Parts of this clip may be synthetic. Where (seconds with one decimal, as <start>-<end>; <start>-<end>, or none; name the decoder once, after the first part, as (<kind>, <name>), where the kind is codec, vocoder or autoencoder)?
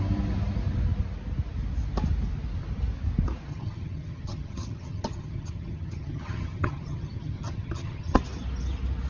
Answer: 3.5-8.2 (vocoder, HiFi-GAN)